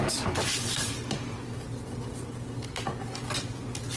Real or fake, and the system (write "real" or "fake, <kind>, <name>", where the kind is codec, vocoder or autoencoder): real